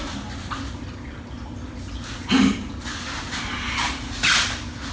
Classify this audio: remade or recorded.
recorded